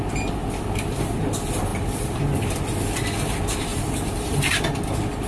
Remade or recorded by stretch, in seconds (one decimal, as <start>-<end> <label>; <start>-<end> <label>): 0.0-1.7 recorded; 1.7-2.2 remade; 2.2-3.7 recorded; 3.7-4.6 remade; 4.6-5.3 recorded